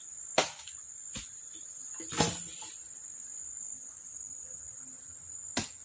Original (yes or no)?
yes